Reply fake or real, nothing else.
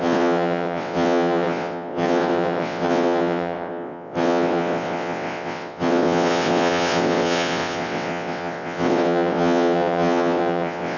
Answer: fake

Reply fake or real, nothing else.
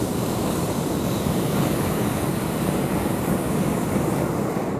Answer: fake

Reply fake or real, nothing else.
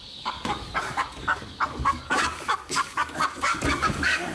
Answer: fake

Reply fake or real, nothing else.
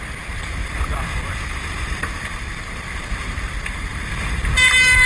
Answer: fake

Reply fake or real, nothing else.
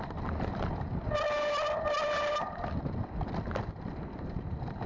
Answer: real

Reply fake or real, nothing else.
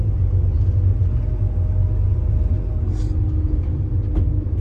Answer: real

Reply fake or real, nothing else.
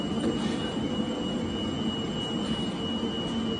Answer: real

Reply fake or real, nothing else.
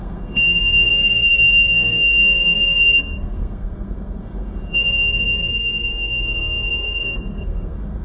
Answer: fake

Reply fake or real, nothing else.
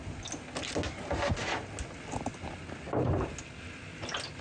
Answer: real